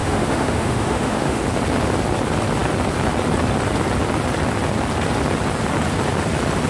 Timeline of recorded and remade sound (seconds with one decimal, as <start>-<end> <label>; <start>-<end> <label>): 0.0-1.4 remade; 1.4-6.7 recorded